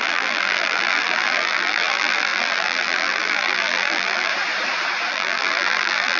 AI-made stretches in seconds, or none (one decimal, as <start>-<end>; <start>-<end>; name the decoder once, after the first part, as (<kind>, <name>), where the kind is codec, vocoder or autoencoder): 0.0-4.3 (vocoder, BigVGAN v2); 5.1-6.2

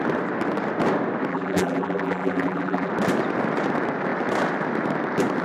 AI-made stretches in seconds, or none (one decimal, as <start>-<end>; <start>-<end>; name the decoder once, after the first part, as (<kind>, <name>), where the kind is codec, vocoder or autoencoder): 1.3-2.9 (vocoder, BigVGAN v2)